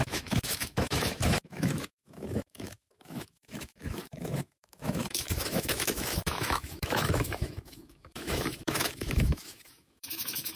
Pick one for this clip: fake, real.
fake